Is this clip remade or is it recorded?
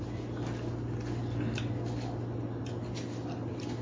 recorded